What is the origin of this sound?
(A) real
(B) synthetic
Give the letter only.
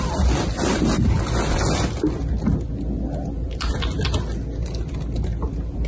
A